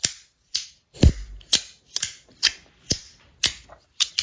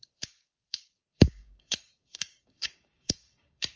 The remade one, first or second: second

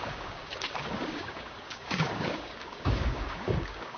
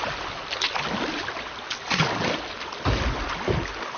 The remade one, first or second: first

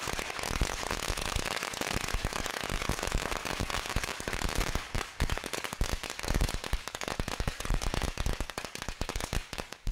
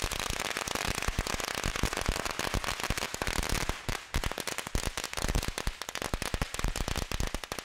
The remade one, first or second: first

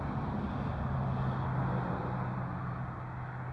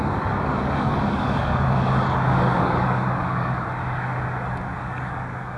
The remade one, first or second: second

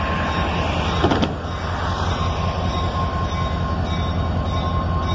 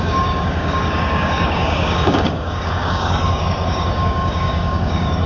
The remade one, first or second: second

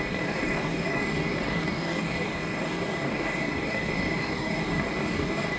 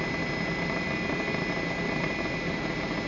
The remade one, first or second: first